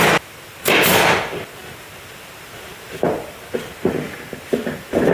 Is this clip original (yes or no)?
yes